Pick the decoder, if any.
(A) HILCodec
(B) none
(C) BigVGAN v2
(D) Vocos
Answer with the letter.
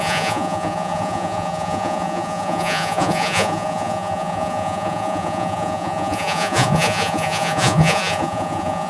D